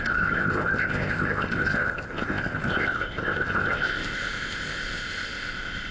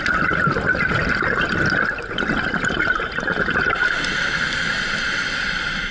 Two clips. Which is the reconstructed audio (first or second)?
first